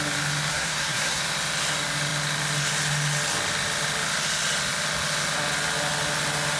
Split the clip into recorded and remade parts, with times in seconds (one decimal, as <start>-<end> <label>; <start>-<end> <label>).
0.0-0.5 recorded; 0.5-1.2 remade; 1.2-6.6 recorded